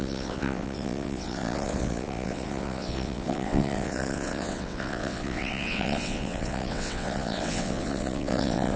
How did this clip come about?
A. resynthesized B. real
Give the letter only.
A